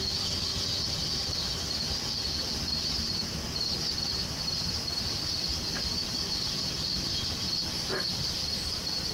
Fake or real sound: real